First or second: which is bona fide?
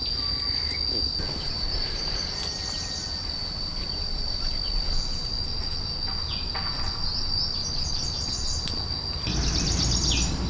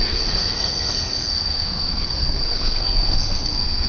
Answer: first